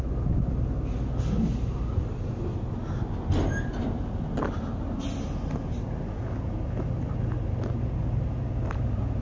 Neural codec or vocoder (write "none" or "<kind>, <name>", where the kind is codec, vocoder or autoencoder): none